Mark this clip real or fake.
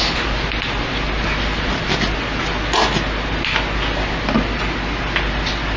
real